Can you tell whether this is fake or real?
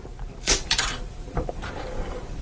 fake